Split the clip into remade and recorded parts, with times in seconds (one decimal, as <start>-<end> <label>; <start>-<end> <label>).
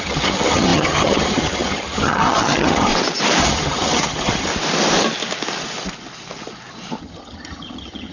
0.0-2.9 remade; 2.9-3.4 recorded; 3.4-4.5 remade; 4.5-7.0 recorded; 7.0-8.1 remade